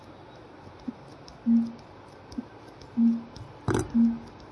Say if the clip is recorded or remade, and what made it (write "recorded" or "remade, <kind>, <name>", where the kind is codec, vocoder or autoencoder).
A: recorded